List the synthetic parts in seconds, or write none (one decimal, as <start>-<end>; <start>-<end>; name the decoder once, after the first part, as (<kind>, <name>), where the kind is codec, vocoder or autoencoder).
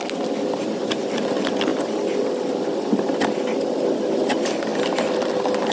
none